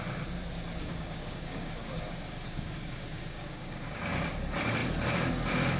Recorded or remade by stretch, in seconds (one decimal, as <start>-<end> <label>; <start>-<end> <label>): 0.0-0.8 recorded; 0.8-4.3 remade; 4.3-5.8 recorded